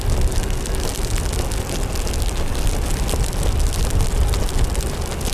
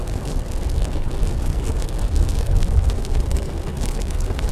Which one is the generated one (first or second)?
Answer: second